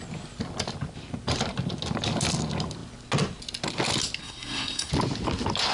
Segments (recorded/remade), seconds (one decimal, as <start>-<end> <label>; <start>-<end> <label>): 0.0-4.2 recorded; 4.2-4.9 remade; 4.9-5.7 recorded